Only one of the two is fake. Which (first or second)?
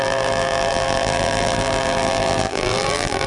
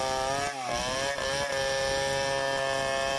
first